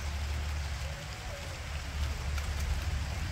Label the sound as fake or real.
real